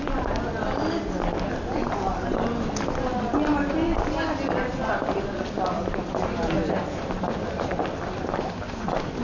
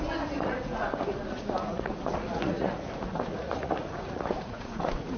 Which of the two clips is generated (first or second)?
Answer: second